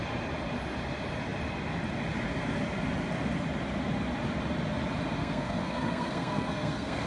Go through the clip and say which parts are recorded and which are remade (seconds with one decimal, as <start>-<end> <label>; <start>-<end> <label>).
0.0-5.2 recorded; 5.2-7.1 remade